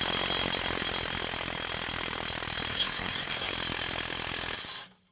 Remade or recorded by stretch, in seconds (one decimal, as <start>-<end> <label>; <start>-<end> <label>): 0.0-2.7 recorded; 2.7-3.5 remade; 3.5-5.1 recorded

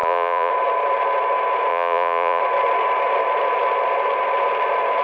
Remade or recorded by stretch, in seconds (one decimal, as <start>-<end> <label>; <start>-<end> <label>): 0.0-0.5 remade; 0.5-1.7 recorded; 1.7-2.4 remade; 2.4-5.0 recorded

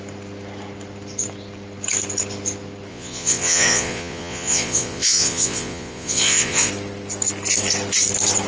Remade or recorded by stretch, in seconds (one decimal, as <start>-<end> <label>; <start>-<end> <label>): 0.0-2.9 recorded; 2.9-6.7 remade; 6.7-8.5 recorded

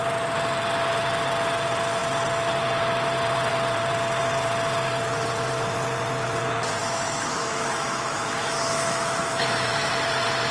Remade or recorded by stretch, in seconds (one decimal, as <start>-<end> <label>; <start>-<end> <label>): 0.0-6.8 recorded; 6.8-9.9 remade; 9.9-10.5 recorded

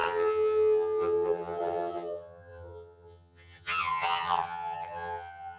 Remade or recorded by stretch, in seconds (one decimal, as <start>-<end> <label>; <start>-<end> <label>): 0.0-5.6 remade

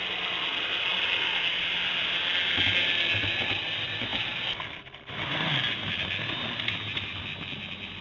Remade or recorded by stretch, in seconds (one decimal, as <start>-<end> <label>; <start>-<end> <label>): 0.0-8.0 recorded

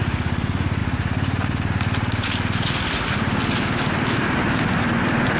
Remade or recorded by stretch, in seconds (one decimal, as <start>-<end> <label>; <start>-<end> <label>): 0.0-5.4 recorded

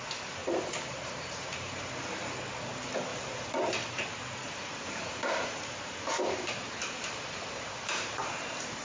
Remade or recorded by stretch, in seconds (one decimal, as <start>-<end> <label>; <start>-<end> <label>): 0.0-0.4 recorded; 0.4-2.4 remade; 2.4-3.1 recorded; 3.1-3.7 remade; 3.7-4.4 recorded; 4.4-8.8 remade